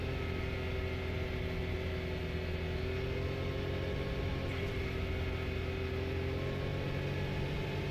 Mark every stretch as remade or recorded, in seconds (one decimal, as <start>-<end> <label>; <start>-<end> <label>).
0.0-7.9 recorded